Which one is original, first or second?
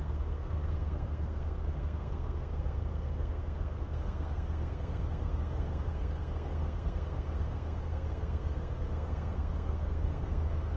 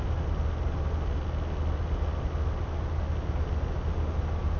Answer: second